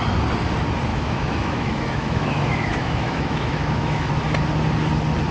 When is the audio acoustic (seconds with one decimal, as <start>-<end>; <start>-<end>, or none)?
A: 0.0-0.9; 4.1-5.3

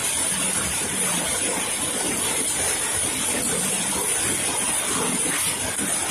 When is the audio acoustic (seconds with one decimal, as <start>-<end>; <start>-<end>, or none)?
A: 0.0-6.1